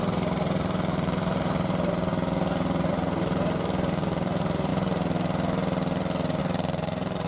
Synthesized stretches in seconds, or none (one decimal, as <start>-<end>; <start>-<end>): 0.0-2.1; 2.9-4.7; 6.4-7.3